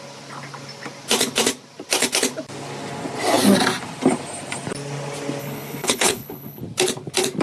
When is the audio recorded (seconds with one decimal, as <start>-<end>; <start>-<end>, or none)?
0.0-5.4; 6.6-7.4